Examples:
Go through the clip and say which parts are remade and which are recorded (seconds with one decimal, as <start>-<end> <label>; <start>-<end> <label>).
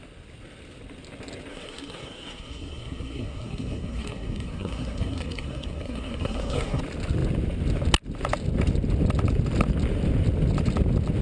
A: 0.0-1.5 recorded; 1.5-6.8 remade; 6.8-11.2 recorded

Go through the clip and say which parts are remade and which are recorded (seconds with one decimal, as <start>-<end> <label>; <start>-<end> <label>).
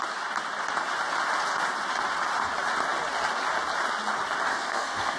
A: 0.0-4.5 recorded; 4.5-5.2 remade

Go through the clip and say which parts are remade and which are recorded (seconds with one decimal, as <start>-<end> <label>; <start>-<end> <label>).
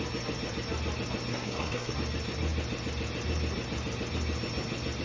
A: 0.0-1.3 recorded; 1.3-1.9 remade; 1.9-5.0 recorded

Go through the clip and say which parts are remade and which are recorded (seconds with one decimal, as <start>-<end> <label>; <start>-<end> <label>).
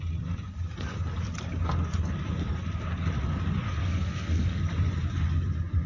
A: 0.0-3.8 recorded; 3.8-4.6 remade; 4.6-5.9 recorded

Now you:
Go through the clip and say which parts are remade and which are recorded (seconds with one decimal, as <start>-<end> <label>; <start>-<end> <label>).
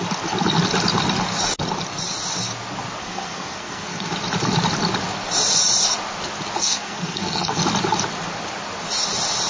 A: 0.0-3.0 recorded; 3.0-4.1 remade; 4.1-6.6 recorded; 6.6-7.6 remade; 7.6-9.5 recorded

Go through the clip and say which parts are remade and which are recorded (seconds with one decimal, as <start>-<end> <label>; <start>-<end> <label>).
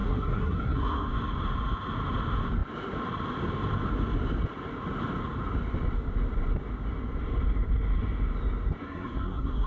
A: 0.0-1.1 remade; 1.1-8.8 recorded; 8.8-9.7 remade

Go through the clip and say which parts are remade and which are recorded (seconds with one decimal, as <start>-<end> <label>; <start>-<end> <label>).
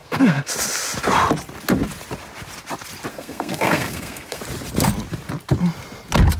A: 0.0-0.5 remade; 0.5-3.1 recorded; 3.1-4.4 remade; 4.4-6.4 recorded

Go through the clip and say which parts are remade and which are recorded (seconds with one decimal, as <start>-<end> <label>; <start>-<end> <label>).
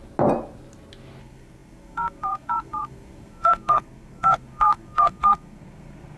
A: 0.0-1.2 recorded; 1.2-6.2 remade